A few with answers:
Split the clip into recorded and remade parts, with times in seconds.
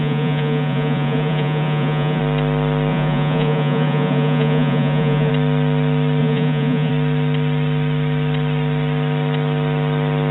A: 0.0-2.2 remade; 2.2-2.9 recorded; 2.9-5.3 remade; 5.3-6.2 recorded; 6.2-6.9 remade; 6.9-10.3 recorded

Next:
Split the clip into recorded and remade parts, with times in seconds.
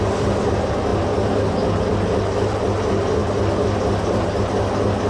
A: 0.0-5.1 recorded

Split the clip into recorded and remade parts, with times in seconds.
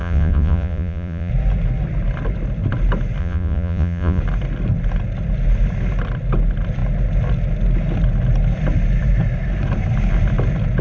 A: 0.0-1.3 remade; 1.3-3.2 recorded; 3.2-4.2 remade; 4.2-10.8 recorded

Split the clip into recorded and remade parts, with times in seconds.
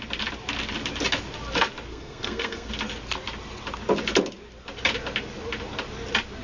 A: 0.0-1.9 recorded; 1.9-2.7 remade; 2.7-6.4 recorded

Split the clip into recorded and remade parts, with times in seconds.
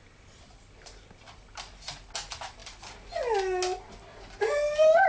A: 0.0-5.1 recorded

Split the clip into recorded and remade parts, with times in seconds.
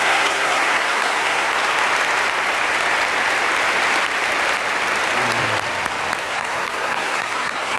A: 0.0-1.5 remade; 1.5-6.2 recorded; 6.2-7.8 remade